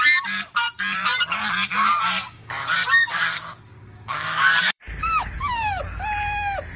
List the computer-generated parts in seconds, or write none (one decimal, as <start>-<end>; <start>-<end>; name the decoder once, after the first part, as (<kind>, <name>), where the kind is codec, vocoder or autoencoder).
1.7-5.8 (codec, DAC)